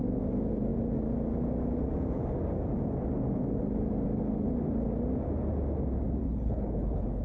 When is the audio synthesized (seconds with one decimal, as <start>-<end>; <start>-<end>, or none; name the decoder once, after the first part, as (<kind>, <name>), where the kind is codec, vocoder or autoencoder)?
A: 6.2-7.2 (codec, HILCodec)